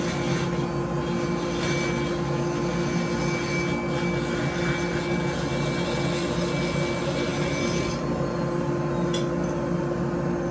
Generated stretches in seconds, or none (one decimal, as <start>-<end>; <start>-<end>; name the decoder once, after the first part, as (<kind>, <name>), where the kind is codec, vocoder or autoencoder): none

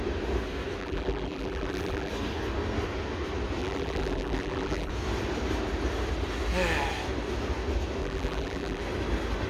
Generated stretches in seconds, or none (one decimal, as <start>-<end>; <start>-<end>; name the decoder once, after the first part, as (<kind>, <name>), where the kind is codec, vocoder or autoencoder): 0.8-2.1 (vocoder, BigVGAN v2); 3.6-4.9; 8.0-8.8

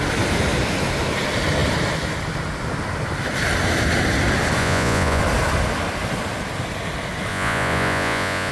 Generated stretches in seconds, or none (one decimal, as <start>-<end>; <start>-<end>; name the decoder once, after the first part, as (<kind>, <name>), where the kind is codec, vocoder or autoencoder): 4.6-5.2 (vocoder, Vocos); 7.3-8.5

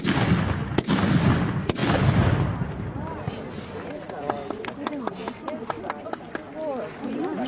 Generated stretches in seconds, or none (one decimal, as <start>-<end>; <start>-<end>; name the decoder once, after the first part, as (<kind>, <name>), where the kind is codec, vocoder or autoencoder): none

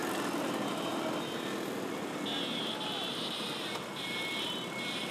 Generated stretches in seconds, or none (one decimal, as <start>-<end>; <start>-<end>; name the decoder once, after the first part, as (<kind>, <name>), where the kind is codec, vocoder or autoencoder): none